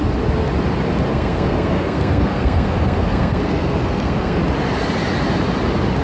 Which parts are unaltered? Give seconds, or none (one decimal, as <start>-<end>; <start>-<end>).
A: 0.0-1.1; 4.4-6.0